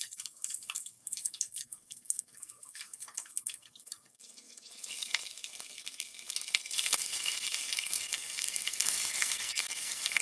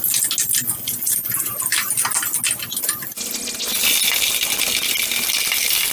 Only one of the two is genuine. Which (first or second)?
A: second